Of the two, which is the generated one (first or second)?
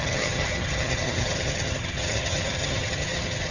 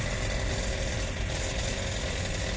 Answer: first